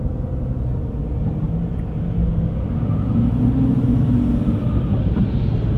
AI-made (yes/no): no